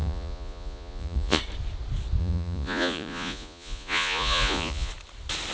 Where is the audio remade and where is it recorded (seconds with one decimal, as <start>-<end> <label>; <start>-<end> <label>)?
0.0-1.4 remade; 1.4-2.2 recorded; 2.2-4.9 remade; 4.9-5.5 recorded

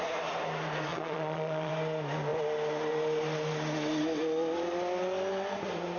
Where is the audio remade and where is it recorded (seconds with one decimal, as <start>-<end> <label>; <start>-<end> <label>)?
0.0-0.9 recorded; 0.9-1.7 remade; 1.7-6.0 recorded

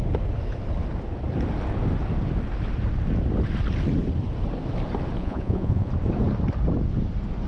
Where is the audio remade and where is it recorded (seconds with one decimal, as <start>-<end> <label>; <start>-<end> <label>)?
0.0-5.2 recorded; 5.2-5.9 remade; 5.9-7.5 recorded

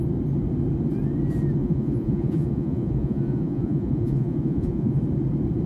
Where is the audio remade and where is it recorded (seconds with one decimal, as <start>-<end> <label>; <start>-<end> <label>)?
0.0-1.6 recorded; 1.6-5.0 remade; 5.0-5.7 recorded